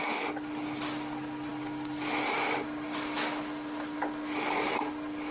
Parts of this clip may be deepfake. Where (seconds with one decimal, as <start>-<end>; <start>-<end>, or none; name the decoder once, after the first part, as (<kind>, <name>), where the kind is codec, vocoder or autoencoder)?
none